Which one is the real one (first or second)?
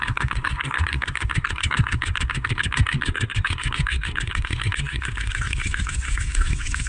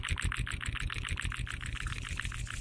second